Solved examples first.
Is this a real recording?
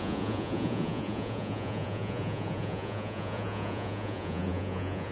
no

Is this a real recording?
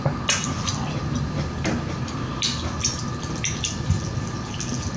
yes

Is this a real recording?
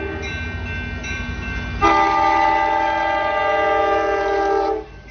yes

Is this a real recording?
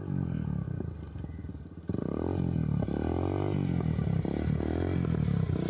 yes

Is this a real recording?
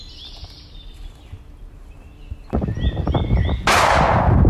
yes